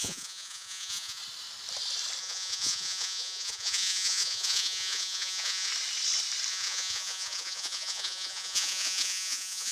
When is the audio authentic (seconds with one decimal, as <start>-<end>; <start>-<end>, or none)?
1.2-2.2; 5.7-6.5